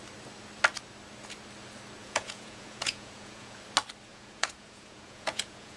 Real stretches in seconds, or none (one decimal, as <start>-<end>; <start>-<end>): 0.0-2.0; 3.6-4.1